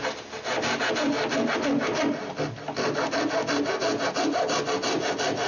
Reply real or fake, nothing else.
real